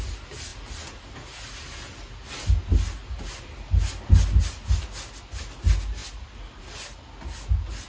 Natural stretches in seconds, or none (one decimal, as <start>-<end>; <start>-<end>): 0.0-7.9